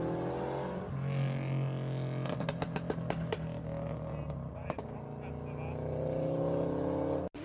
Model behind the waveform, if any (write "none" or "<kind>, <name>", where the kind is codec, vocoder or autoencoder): none